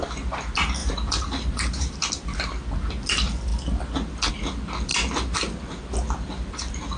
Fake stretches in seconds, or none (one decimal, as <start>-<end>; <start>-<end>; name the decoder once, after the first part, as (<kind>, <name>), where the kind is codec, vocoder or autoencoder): 0.8-2.4 (vocoder, BigVGAN v2)